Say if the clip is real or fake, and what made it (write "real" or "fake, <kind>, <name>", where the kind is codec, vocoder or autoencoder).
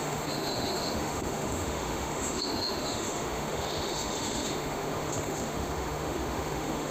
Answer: fake, autoencoder, DAC-VAE